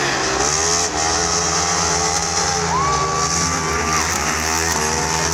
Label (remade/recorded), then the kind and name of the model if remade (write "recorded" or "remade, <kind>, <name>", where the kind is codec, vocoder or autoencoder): recorded